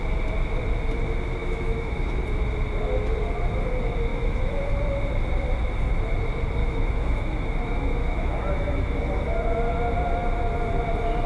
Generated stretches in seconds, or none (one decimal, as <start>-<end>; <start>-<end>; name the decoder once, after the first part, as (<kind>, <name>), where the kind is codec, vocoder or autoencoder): 1.4-2.2 (autoencoder, DAC-VAE); 4.1-4.7; 6.6-9.0